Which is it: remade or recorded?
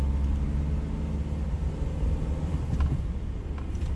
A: recorded